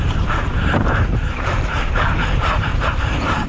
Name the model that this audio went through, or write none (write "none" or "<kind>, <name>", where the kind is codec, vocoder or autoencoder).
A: vocoder, BigVGAN v2